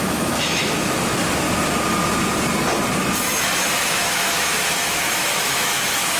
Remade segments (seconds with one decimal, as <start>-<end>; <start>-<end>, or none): 0.0-1.1; 3.6-6.2